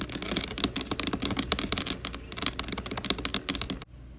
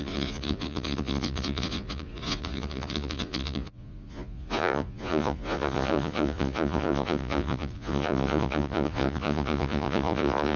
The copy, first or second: second